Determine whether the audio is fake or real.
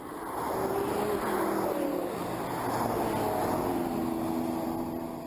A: real